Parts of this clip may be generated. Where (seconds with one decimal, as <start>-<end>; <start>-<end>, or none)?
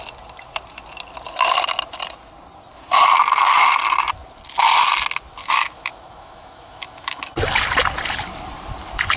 5.4-7.2